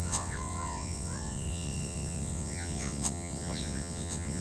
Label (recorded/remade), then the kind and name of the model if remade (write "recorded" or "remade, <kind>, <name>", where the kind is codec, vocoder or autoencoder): remade, vocoder, WaveNeXt